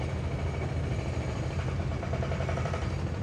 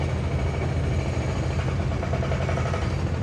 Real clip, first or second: second